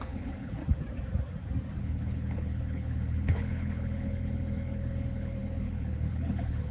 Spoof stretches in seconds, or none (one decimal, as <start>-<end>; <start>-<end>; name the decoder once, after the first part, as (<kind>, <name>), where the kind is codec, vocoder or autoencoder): 0.0-0.6 (codec, HILCodec); 1.8-6.7

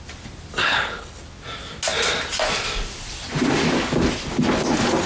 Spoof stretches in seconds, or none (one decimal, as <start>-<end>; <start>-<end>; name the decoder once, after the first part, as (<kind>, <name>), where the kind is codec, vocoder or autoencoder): 0.6-1.2 (codec, HILCodec)

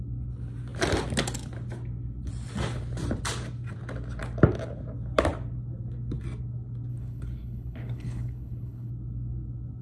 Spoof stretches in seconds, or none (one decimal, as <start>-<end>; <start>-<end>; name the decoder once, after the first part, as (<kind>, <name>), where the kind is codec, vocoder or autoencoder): 6.9-8.9 (codec, HILCodec)